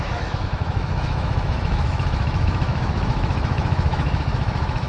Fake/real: fake